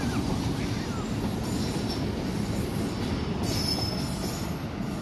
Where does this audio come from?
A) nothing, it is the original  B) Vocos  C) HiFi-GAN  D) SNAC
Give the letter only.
A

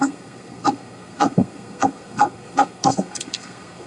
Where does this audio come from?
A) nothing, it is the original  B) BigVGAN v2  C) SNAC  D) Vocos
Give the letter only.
C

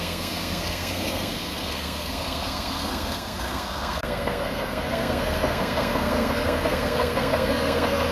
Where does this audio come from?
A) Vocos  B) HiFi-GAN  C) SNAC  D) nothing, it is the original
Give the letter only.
C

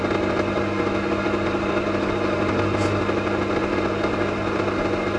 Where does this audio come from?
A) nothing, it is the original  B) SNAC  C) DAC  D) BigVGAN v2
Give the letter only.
A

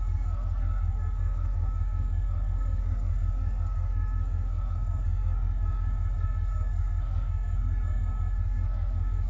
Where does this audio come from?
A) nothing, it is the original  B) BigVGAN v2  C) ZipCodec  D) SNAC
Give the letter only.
D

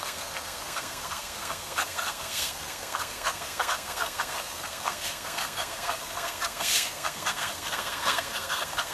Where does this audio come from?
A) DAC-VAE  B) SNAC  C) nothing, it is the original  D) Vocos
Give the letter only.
B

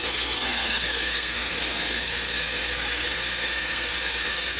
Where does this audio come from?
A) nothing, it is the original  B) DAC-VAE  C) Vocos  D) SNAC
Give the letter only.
D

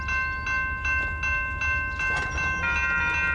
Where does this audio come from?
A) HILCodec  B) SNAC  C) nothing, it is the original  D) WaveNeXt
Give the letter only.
C